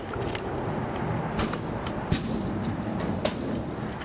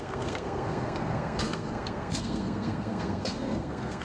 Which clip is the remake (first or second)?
second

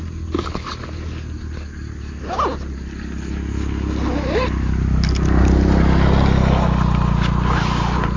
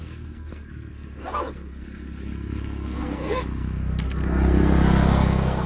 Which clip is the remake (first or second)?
second